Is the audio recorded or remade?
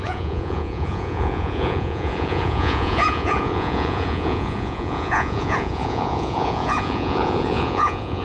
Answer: remade